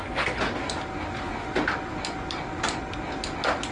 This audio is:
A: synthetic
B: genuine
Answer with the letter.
B